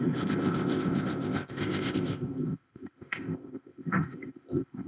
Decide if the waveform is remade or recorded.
remade